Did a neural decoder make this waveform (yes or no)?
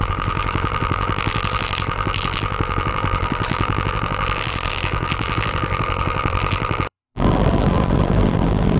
yes